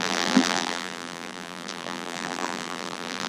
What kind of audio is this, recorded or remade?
remade